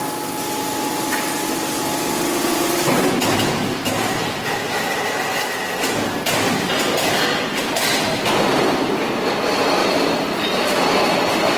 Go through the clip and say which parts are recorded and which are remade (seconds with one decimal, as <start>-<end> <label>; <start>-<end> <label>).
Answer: 0.0-9.8 recorded; 9.8-11.1 remade; 11.1-11.6 recorded